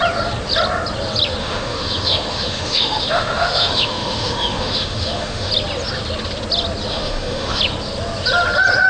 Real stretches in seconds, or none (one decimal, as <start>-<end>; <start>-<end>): 0.0-1.4; 5.5-6.9; 7.6-8.9